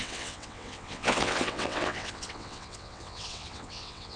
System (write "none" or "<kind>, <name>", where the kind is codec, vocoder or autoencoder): vocoder, WaveNeXt